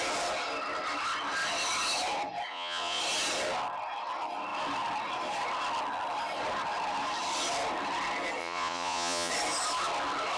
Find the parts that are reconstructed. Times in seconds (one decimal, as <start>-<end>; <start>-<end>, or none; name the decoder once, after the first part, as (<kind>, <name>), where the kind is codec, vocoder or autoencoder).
2.5-3.0 (vocoder, Vocos); 8.4-9.3